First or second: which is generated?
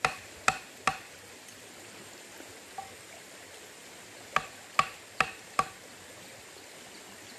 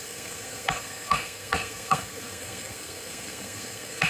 second